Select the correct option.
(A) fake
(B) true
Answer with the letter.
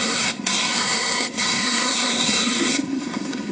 A